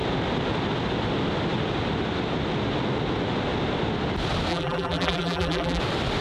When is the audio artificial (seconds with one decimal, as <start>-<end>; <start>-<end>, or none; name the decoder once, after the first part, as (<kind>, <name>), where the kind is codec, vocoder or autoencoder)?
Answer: 4.5-5.8 (vocoder, BigVGAN v2)